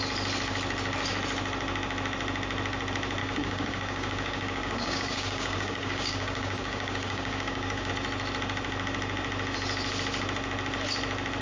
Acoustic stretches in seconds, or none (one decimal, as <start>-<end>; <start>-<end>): 0.0-3.2; 7.9-11.4